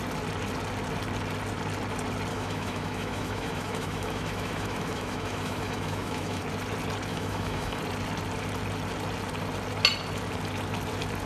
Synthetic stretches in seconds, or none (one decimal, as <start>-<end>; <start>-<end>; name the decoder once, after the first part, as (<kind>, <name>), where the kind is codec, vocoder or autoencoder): 2.3-6.4 (autoencoder, DAC-VAE); 7.1-7.8